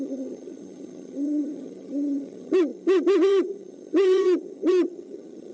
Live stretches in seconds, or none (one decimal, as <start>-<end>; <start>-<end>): none